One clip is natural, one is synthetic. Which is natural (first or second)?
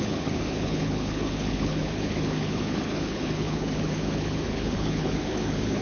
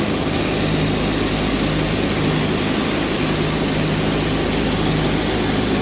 second